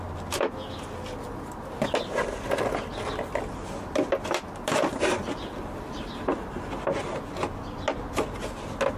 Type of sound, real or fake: real